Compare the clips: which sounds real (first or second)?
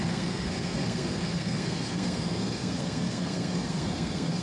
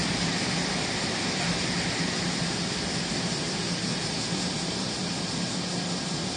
second